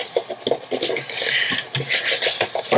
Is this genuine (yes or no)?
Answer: yes